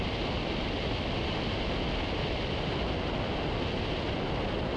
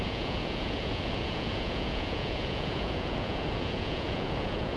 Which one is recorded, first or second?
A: first